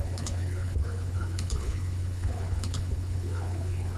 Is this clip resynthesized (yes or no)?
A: yes